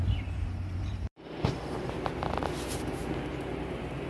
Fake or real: fake